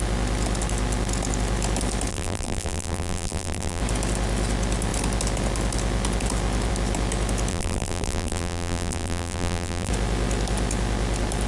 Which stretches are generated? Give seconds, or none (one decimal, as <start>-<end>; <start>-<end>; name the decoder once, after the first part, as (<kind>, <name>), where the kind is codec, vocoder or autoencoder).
2.1-3.8 (vocoder, BigVGAN v2); 7.5-9.9